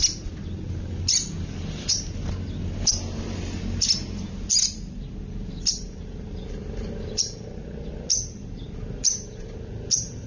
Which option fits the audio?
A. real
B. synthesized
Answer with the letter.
A